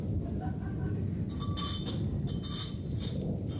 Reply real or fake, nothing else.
real